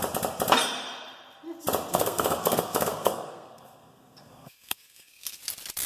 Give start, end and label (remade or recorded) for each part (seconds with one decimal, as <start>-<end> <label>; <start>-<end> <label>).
0.0-1.9 recorded; 1.9-5.4 remade; 5.4-5.9 recorded